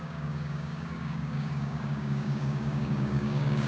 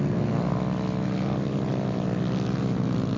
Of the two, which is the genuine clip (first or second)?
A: second